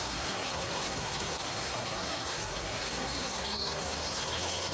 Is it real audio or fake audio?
fake